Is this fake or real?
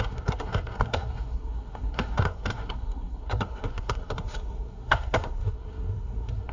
fake